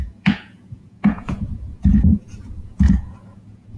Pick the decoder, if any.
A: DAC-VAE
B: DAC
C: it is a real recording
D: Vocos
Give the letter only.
D